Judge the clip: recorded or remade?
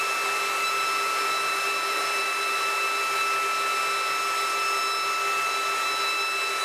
recorded